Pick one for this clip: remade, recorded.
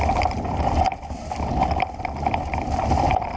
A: recorded